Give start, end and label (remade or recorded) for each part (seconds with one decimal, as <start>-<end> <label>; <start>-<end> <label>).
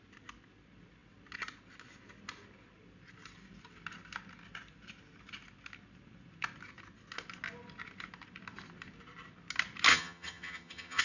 0.0-9.9 recorded; 9.9-11.0 remade